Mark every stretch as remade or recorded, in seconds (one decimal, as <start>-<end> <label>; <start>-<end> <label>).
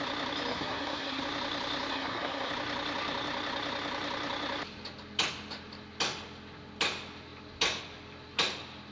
0.0-0.5 recorded; 0.5-1.2 remade; 1.2-1.9 recorded; 1.9-2.5 remade; 2.5-8.9 recorded